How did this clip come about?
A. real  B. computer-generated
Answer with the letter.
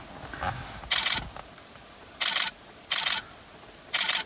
A